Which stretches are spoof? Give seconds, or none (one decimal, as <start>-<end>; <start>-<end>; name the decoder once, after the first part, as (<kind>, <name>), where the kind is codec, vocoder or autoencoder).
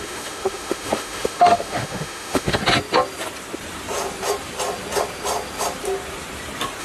0.0-2.6 (autoencoder, DAC-VAE)